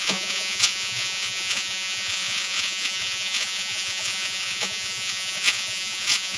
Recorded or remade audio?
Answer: remade